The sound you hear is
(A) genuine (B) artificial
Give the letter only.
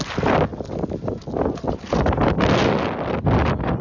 A